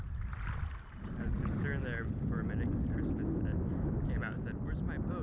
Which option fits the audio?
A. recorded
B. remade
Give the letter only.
A